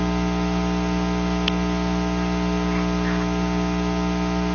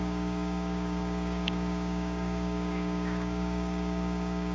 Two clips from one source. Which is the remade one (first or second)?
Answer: second